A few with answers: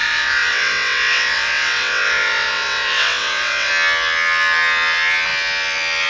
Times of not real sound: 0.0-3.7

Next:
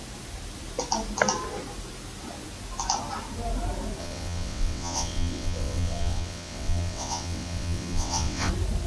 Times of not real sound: 4.0-8.5

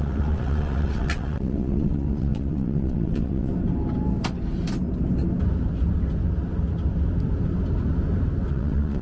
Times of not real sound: 0.0-3.5; 8.5-9.0

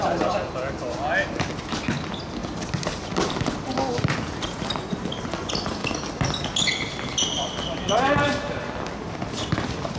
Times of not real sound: none

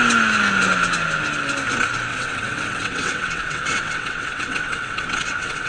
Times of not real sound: 2.1-5.7